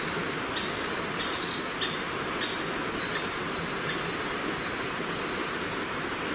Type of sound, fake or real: real